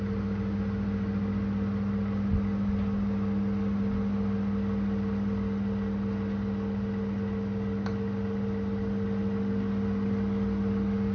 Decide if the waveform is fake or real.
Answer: real